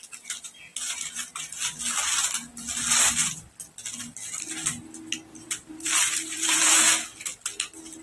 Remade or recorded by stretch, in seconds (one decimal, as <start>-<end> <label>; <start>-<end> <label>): 0.0-0.7 recorded; 0.7-1.4 remade; 1.4-5.3 recorded; 5.3-6.8 remade; 6.8-8.0 recorded